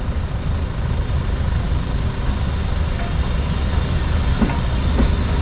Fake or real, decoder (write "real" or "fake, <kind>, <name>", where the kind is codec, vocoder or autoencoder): real